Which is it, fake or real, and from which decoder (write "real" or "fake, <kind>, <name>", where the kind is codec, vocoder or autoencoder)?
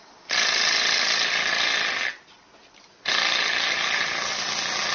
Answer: real